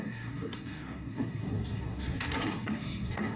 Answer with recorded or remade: remade